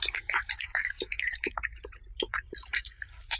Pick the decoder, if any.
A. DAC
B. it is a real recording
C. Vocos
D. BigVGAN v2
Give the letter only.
D